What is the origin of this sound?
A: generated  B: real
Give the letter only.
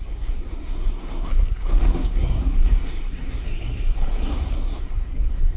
A